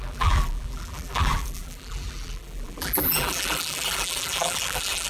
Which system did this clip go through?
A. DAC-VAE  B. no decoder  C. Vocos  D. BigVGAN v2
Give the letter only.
D